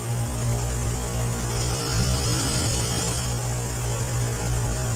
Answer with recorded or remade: recorded